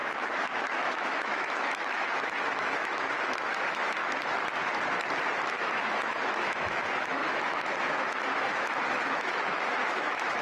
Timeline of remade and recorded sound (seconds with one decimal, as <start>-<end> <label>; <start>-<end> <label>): 0.0-4.0 remade; 4.0-5.5 recorded; 5.5-10.4 remade